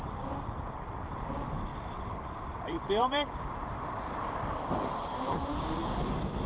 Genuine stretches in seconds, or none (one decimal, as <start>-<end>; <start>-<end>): 0.0-1.7; 5.6-6.5